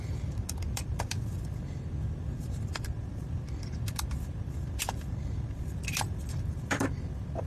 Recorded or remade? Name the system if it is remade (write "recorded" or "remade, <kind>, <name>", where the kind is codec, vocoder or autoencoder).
remade, vocoder, BigVGAN v2